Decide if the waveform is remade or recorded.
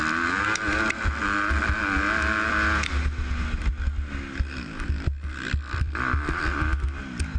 recorded